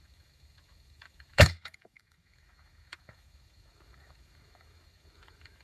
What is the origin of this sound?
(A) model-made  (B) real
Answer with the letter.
A